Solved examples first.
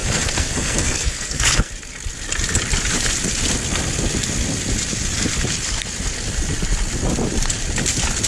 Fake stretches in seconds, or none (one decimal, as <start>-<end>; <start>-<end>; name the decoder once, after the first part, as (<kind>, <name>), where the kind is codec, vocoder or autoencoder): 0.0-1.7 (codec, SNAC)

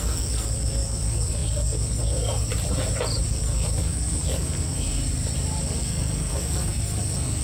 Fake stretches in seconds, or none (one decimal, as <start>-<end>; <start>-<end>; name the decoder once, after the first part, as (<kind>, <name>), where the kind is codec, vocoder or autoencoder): 0.0-2.5 (codec, SNAC); 3.3-5.0; 5.6-7.4

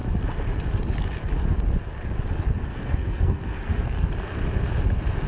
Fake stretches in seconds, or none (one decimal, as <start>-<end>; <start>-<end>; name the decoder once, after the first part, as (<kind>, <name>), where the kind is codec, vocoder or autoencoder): 2.7-4.1 (codec, SNAC)

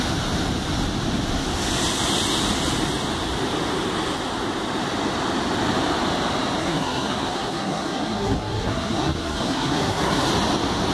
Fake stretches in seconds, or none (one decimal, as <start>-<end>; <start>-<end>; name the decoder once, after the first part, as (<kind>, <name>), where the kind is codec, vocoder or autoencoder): 6.6-10.3 (codec, SNAC)

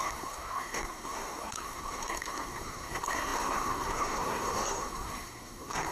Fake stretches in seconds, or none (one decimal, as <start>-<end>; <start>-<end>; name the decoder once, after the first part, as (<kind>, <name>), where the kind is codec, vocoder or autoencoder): 0.0-5.9 (codec, SNAC)

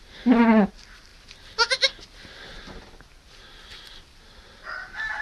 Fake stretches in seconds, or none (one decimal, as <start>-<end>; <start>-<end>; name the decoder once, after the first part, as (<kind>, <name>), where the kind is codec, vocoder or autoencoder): none

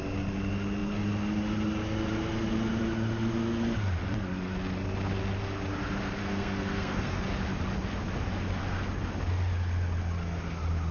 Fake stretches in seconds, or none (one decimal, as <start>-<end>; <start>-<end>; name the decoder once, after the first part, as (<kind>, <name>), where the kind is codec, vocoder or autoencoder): 6.2-7.2 (codec, SNAC)

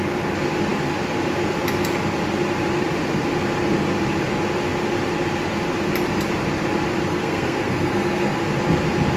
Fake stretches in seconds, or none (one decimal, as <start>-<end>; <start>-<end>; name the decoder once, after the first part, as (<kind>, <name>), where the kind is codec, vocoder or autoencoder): 7.1-8.4 (codec, SNAC)